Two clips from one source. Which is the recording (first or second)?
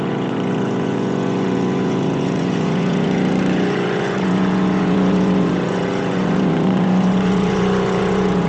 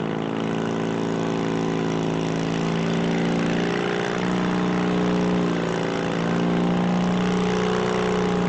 second